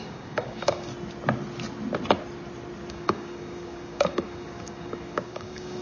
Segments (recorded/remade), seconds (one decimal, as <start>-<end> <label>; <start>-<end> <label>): 0.0-0.9 remade; 0.9-2.9 recorded; 2.9-5.8 remade